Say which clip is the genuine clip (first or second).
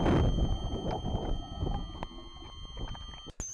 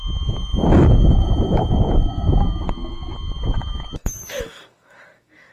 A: first